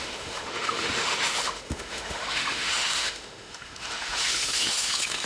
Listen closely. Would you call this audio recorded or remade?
remade